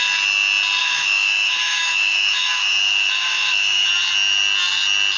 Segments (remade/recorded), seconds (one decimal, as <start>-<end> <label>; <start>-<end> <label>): 0.0-0.8 recorded; 0.8-3.9 remade; 3.9-5.2 recorded